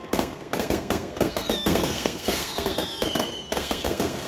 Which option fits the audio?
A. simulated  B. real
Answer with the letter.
A